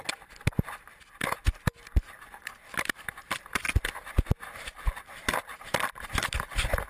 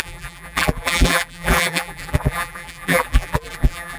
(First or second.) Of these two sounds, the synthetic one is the second